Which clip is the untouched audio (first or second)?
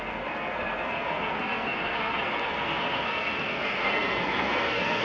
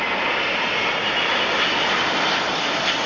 second